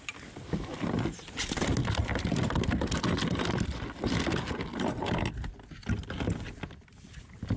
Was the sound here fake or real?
real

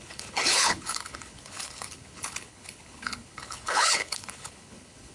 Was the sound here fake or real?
fake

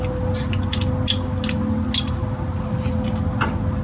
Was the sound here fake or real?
real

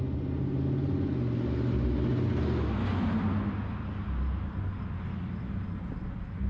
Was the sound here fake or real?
real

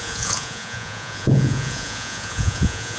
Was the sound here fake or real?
fake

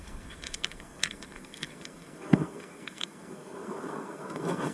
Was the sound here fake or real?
fake